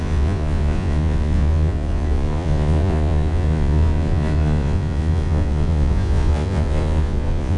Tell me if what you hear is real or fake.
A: fake